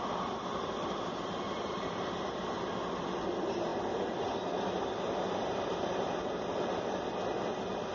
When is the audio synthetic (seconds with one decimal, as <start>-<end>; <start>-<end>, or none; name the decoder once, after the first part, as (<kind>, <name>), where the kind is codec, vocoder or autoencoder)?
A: none

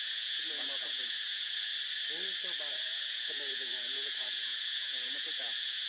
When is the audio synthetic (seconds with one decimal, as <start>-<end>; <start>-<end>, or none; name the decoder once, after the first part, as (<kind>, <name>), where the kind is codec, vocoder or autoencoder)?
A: 0.0-1.7 (vocoder, Vocos); 2.7-5.9

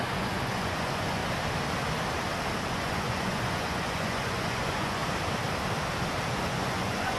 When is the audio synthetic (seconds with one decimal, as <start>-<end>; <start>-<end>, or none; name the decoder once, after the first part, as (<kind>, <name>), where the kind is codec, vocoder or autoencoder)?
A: 0.0-1.2 (vocoder, Vocos); 2.7-5.0; 6.3-7.2

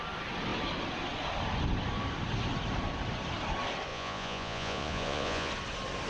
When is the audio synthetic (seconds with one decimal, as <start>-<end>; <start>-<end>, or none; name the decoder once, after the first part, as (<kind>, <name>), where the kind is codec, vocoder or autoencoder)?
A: 3.9-5.5 (vocoder, Vocos)

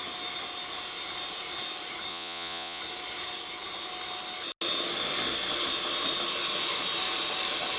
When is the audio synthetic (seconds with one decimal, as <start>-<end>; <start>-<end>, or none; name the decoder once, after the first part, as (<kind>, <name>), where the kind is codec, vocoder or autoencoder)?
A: 2.1-2.8 (vocoder, Vocos)

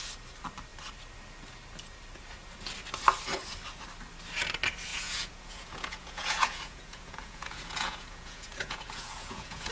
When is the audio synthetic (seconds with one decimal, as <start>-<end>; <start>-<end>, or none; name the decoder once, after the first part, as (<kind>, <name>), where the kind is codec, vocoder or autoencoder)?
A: 4.9-9.7 (vocoder, Vocos)

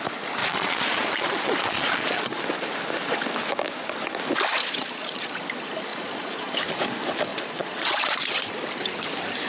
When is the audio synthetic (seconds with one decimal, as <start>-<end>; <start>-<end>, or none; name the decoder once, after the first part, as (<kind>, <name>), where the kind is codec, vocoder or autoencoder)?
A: 0.4-2.4 (vocoder, Vocos); 4.5-5.4; 5.9-6.6; 7.3-8.5